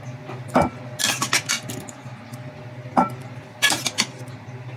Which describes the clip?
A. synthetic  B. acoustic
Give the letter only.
B